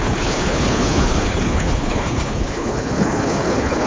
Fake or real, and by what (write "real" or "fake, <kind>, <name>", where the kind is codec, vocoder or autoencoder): fake, codec, HILCodec